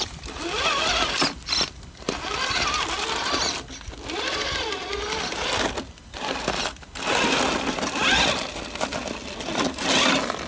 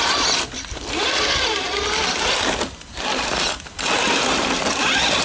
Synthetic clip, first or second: second